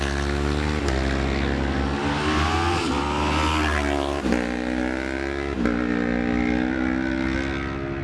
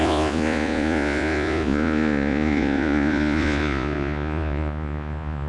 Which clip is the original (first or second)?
first